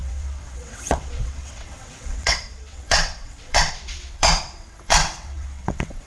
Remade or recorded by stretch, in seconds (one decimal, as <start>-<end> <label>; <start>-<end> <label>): 0.0-6.1 remade